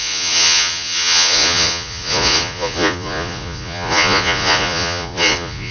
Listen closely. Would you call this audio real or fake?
fake